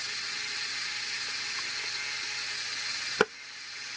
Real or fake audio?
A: real